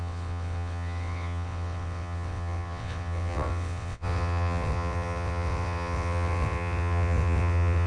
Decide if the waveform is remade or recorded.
remade